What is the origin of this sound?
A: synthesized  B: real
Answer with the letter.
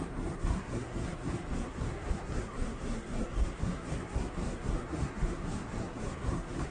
A